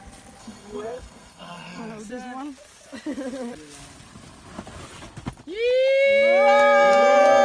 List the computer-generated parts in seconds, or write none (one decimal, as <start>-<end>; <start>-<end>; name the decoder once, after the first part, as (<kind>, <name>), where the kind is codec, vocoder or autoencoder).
0.4-1.8 (codec, SNAC)